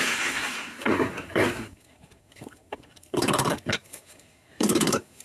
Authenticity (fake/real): fake